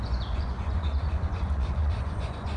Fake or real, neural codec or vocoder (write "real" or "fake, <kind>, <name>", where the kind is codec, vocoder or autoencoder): fake, vocoder, Vocos